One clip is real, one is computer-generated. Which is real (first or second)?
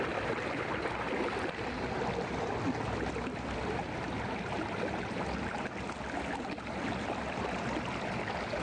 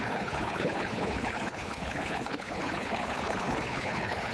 first